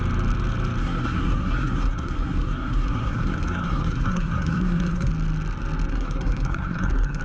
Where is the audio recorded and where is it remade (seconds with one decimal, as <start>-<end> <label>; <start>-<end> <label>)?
0.0-0.8 recorded; 0.8-5.1 remade; 5.1-5.9 recorded; 5.9-7.2 remade